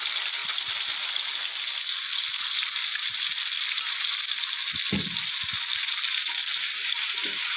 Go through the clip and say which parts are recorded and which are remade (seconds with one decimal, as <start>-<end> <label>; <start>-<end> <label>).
0.0-7.6 recorded